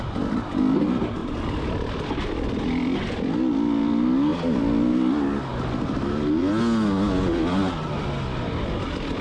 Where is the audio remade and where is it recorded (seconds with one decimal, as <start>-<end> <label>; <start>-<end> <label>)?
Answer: 0.0-1.2 recorded; 1.2-1.9 remade; 1.9-9.2 recorded